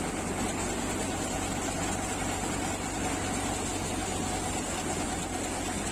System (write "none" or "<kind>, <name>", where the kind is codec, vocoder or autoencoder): none